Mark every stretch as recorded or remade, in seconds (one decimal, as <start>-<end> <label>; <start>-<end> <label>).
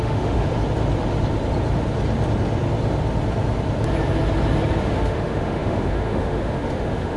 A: 0.0-0.5 remade; 0.5-4.8 recorded; 4.8-7.2 remade